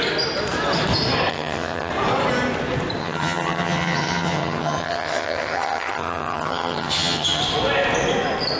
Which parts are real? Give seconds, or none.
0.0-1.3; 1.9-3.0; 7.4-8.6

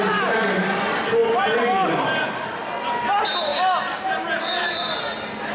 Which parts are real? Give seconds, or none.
0.0-5.5

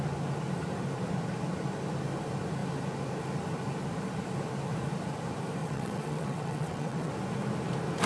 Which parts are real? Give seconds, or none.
0.0-5.6; 7.1-8.1

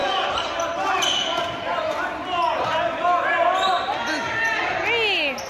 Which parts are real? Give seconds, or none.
0.0-5.5

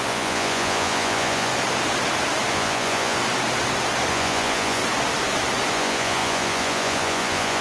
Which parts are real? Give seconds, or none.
1.5-2.5; 3.2-4.1; 4.8-5.7

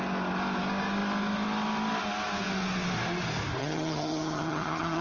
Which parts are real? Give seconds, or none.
0.0-3.6

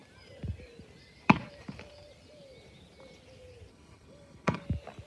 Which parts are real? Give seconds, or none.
0.0-3.7; 4.6-5.1